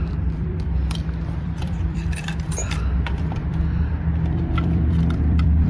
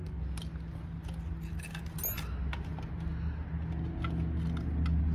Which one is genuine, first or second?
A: second